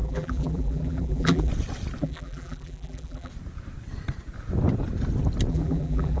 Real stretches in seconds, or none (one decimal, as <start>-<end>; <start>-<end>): 1.5-2.0; 3.3-5.5